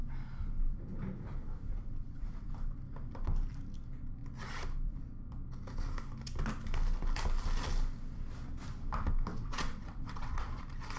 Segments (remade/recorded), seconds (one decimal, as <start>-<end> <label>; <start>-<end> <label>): 0.0-1.7 recorded; 1.7-2.5 remade; 2.5-9.3 recorded; 9.3-10.6 remade; 10.6-11.0 recorded